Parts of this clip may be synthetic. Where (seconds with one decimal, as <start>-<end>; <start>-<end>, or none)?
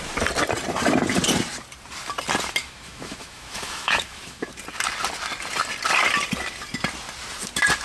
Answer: 2.6-4.5